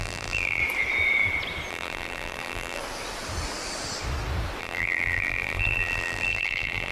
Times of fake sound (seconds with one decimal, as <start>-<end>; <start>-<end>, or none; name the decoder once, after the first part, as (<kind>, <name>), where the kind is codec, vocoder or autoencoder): 0.0-0.6 (vocoder, BigVGAN v2); 1.7-2.8; 4.6-6.9